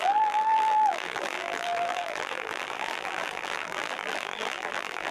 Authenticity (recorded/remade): remade